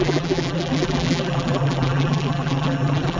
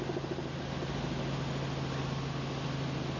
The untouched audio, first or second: second